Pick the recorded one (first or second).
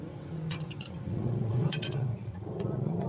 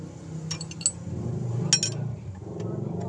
second